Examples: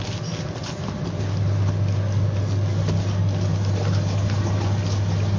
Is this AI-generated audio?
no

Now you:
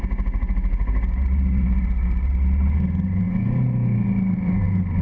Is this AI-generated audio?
no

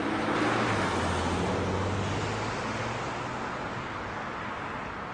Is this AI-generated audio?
no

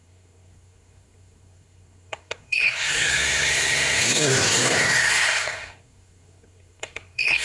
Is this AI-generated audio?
yes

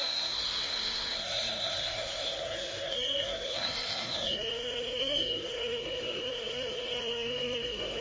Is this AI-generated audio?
yes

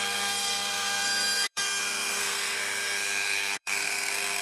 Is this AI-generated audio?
yes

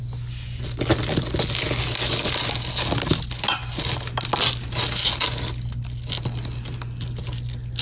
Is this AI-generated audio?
no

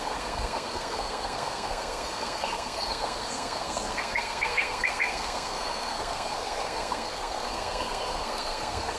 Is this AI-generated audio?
yes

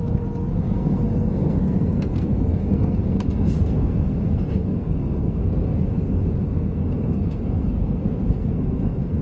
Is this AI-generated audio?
yes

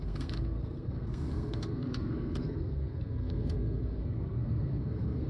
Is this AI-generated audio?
yes